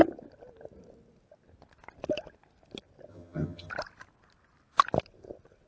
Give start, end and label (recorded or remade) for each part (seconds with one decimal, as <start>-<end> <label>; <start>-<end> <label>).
0.0-3.1 recorded; 3.1-3.7 remade; 3.7-5.7 recorded